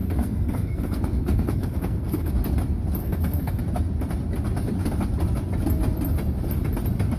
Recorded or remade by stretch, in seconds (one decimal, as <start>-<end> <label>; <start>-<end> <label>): 0.0-2.3 remade; 2.3-3.0 recorded; 3.0-3.6 remade; 3.6-7.2 recorded